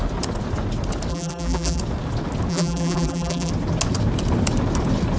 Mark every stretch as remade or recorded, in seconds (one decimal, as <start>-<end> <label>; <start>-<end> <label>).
0.0-1.1 recorded; 1.1-1.8 remade; 1.8-2.5 recorded; 2.5-3.5 remade; 3.5-5.2 recorded